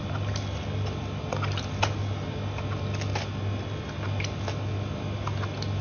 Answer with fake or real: real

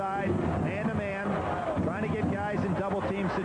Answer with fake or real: real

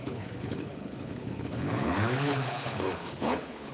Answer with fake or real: fake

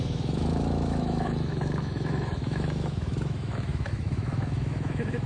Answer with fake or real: fake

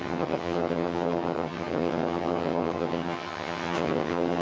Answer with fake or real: fake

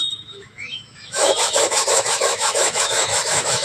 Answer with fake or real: fake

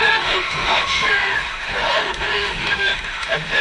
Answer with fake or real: fake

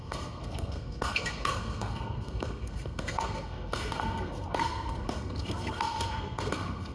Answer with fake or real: fake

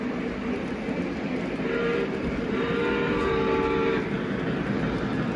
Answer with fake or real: real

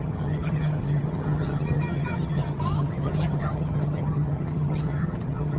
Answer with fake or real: fake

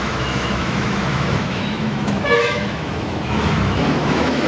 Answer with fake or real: fake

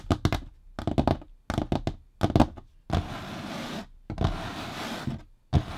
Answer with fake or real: real